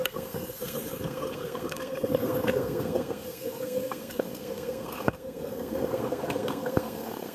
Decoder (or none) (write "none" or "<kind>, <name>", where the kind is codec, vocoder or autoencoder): codec, SNAC